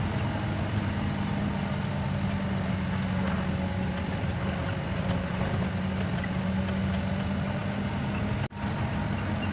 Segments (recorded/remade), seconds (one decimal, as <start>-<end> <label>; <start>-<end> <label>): 0.0-9.5 recorded